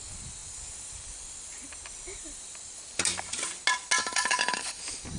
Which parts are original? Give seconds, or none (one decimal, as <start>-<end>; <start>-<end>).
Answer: 0.0-4.0; 4.8-5.2